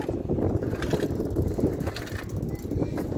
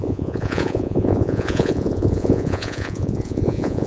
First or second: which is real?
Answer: first